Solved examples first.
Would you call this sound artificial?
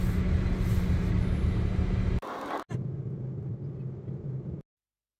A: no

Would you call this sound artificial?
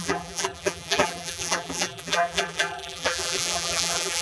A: yes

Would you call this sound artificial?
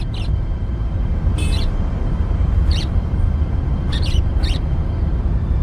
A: yes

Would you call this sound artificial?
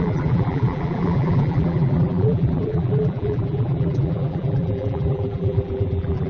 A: yes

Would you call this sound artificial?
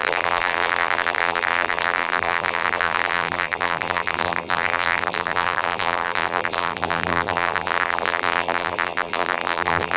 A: yes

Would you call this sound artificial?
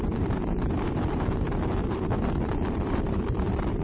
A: yes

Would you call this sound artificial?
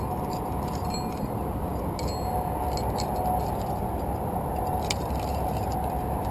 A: no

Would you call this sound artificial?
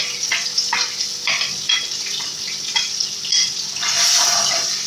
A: no